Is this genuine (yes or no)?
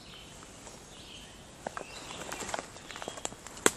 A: yes